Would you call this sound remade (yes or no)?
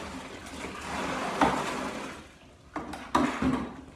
no